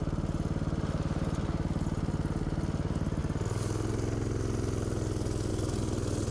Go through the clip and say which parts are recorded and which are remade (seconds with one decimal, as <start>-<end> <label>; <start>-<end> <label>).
0.0-6.3 recorded